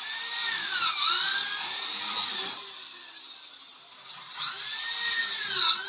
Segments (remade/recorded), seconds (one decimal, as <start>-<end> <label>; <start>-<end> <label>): 0.0-5.9 recorded